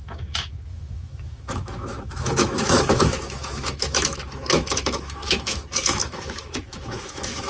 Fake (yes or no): yes